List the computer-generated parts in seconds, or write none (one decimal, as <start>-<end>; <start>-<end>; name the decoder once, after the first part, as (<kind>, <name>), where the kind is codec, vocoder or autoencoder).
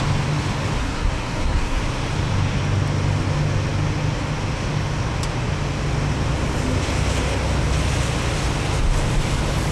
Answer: 0.8-1.8 (codec, SNAC)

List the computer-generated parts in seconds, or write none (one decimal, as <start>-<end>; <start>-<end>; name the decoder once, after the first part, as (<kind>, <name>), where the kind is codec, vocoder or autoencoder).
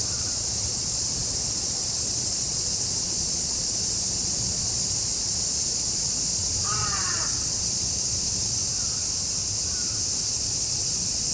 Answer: 0.0-8.6 (vocoder, Vocos); 10.1-11.3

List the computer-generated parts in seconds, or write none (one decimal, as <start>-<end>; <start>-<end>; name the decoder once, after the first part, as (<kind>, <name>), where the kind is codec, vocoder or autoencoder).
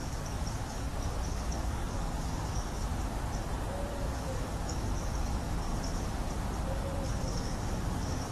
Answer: 0.0-2.9 (codec, DAC); 3.9-5.7; 6.6-8.3